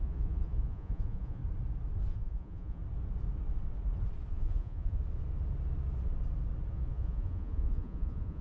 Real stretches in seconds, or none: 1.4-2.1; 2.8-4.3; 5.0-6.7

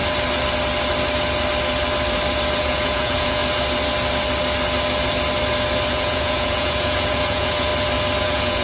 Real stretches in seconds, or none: 0.0-2.6; 3.4-5.9; 7.7-8.2

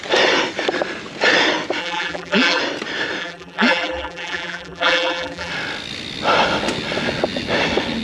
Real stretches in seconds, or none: 0.0-1.8; 2.6-3.2; 5.5-8.0

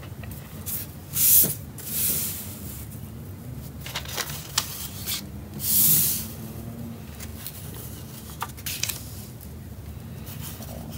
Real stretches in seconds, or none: 0.0-11.0

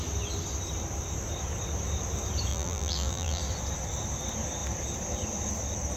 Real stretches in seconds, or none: 0.0-2.5; 3.4-6.0

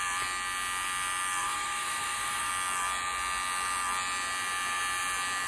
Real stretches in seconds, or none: 0.0-1.4; 2.5-5.5